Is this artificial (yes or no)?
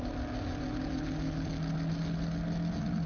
no